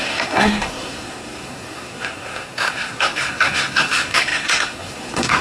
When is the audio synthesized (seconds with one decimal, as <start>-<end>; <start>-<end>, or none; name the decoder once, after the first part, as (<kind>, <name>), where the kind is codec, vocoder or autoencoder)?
0.0-5.4 (codec, SNAC)